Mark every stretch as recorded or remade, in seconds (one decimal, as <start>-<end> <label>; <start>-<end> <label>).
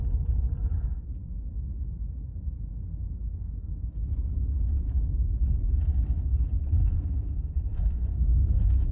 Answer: 0.0-3.0 recorded; 3.0-3.7 remade; 3.7-6.8 recorded; 6.8-8.9 remade